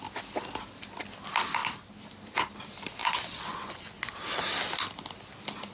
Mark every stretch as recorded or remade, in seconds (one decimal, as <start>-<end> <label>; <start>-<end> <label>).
0.0-3.0 recorded; 3.0-4.1 remade; 4.1-5.7 recorded